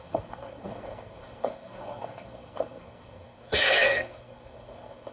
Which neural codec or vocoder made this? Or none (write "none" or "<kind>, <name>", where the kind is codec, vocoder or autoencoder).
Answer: codec, SNAC